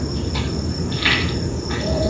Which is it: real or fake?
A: real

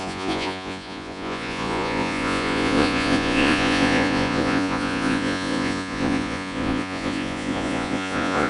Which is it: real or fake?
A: fake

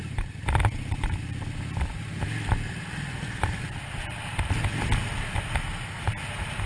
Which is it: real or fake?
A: real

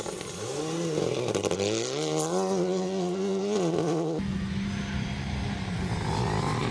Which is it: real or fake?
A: real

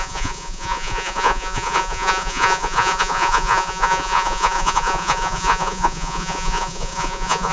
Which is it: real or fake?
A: fake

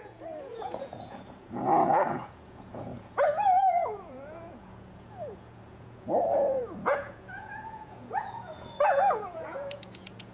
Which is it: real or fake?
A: fake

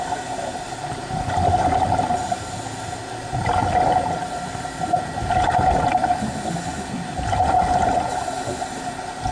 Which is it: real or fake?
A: real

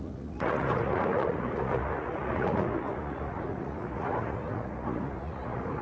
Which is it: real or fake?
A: fake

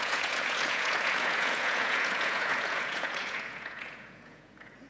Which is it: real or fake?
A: fake